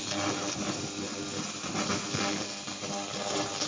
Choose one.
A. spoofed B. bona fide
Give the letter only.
B